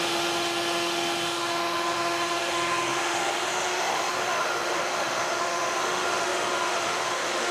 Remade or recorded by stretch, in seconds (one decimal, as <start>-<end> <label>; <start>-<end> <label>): 0.0-7.5 remade